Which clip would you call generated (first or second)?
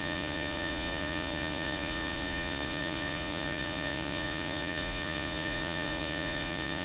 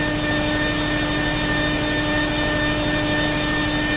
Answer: first